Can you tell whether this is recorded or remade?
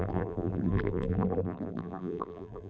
remade